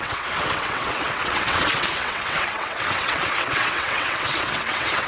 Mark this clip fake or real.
fake